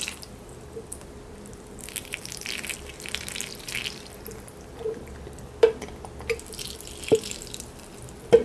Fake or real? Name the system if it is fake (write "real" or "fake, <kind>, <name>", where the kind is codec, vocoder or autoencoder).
fake, vocoder, BigVGAN v2